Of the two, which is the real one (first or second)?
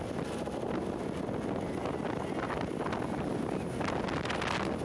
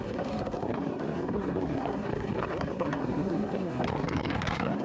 first